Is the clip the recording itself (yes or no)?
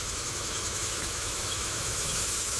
no